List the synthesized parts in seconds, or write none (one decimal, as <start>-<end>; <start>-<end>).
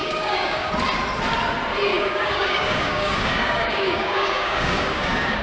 0.0-0.7; 1.9-5.4